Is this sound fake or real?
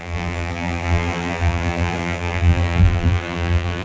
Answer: fake